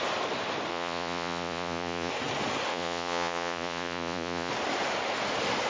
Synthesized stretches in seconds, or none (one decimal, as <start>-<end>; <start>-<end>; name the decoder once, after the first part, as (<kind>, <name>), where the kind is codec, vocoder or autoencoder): 0.7-2.1 (vocoder, Vocos); 2.7-4.5

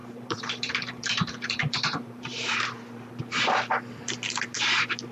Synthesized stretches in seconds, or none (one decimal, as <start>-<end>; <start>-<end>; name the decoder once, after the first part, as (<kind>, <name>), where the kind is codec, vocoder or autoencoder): 0.0-3.1 (vocoder, BigVGAN v2)

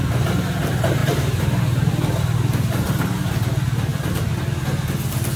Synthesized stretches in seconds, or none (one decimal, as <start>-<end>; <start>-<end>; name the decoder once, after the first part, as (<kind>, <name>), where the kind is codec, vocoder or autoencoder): 1.0-1.9 (vocoder, BigVGAN v2); 3.9-4.5

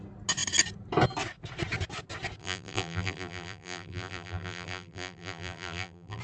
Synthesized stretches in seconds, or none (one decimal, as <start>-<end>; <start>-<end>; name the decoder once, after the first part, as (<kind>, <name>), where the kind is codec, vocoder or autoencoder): 2.4-6.2 (vocoder, BigVGAN v2)

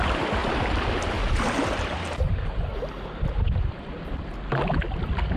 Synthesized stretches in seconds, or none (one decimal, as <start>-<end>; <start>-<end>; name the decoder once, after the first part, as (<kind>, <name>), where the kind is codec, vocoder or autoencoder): 0.0-0.4 (vocoder, BigVGAN v2); 1.4-2.7